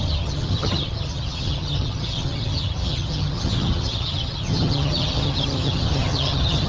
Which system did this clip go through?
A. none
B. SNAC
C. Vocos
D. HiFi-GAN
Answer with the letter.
D